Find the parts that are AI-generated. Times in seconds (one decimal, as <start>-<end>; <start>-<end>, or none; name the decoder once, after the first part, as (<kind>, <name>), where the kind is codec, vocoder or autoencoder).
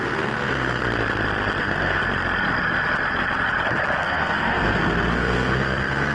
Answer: 0.0-0.8 (codec, SNAC); 1.6-2.0; 4.0-6.1